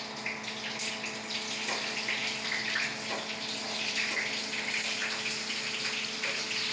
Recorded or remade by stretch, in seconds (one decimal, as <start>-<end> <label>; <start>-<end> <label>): 0.0-6.7 recorded